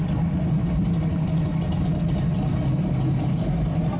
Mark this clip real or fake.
real